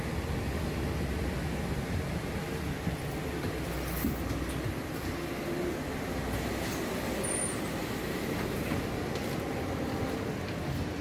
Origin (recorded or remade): recorded